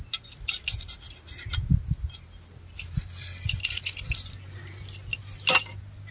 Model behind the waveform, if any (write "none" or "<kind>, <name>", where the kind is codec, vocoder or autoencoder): none